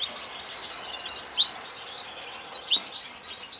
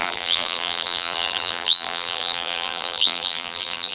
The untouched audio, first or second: first